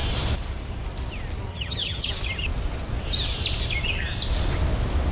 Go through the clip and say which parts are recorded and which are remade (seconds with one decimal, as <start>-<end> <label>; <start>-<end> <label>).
0.0-1.5 recorded; 1.5-2.1 remade; 2.1-5.1 recorded